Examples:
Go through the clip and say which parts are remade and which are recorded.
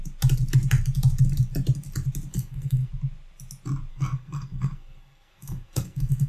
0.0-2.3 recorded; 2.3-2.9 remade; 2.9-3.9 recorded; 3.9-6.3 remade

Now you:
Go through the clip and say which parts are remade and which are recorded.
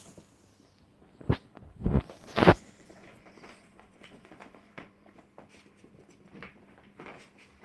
0.0-1.5 recorded; 1.5-5.2 remade; 5.2-7.6 recorded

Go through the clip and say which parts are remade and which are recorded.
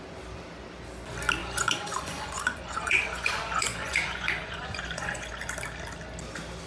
0.0-1.4 recorded; 1.4-5.4 remade; 5.4-6.7 recorded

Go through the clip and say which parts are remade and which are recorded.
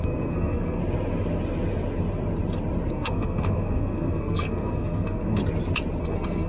0.0-0.8 remade; 0.8-2.9 recorded; 2.9-5.4 remade; 5.4-6.0 recorded; 6.0-6.5 remade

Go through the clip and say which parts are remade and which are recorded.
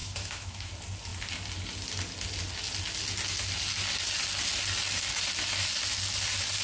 0.0-0.7 remade; 0.7-6.6 recorded